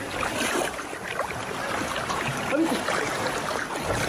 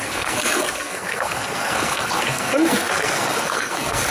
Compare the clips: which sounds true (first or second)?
first